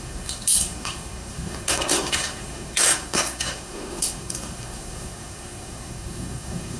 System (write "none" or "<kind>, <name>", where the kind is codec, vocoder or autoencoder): codec, SNAC